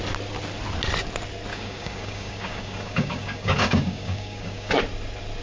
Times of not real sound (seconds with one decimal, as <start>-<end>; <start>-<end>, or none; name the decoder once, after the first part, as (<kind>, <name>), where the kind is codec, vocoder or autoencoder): 1.5-4.7 (codec, DAC)

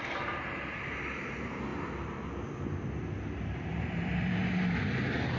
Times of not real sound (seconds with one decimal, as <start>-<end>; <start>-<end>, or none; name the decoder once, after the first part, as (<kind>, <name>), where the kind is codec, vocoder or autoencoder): 0.0-1.7 (vocoder, BigVGAN v2); 3.4-4.4

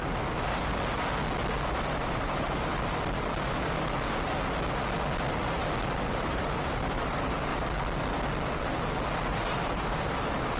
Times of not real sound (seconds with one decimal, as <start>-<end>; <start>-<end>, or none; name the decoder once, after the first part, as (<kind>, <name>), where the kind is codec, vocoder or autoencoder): 0.0-0.7 (vocoder, BigVGAN v2); 1.7-2.7; 6.1-7.5; 9.3-10.6

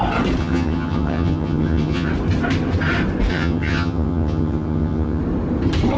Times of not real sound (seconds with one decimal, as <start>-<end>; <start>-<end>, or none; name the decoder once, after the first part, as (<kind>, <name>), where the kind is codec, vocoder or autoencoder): 0.4-2.1 (vocoder, HiFi-GAN); 3.3-5.2